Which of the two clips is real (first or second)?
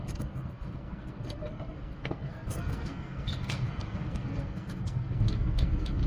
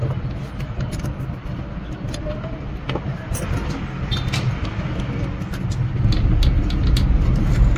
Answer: second